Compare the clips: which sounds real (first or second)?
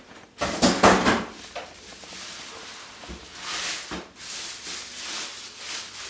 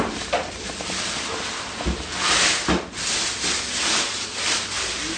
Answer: first